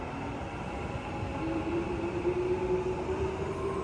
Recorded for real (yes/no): no